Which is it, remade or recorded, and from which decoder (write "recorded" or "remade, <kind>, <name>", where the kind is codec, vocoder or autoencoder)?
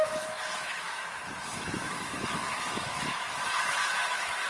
remade, autoencoder, DAC-VAE